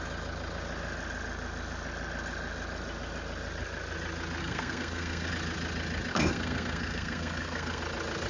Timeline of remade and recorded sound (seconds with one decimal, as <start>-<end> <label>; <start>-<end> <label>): 0.0-4.4 recorded; 4.4-5.3 remade; 5.3-6.1 recorded; 6.1-7.8 remade; 7.8-8.3 recorded